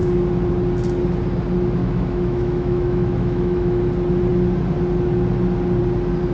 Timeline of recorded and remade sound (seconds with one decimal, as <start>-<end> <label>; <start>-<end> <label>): 0.0-1.8 recorded; 1.8-3.8 remade; 3.8-6.3 recorded